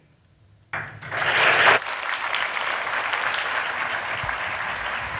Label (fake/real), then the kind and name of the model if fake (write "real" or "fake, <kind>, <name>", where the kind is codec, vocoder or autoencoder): real